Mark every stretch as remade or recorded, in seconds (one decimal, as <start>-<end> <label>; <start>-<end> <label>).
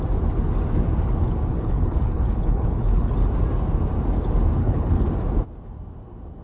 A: 0.0-1.5 recorded; 1.5-3.1 remade; 3.1-4.6 recorded; 4.6-5.1 remade; 5.1-6.4 recorded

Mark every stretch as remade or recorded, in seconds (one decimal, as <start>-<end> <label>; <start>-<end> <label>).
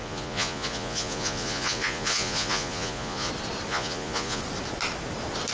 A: 0.0-3.3 remade; 3.3-3.7 recorded; 3.7-4.4 remade; 4.4-5.5 recorded